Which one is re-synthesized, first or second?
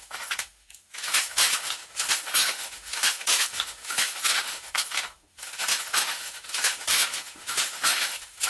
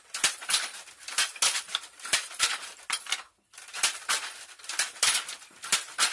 first